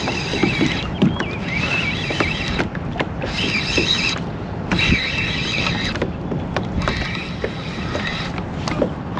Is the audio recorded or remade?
recorded